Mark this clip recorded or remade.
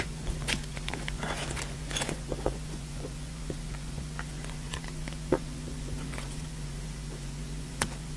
remade